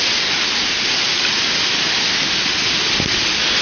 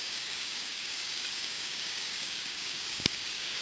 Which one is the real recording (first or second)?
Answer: first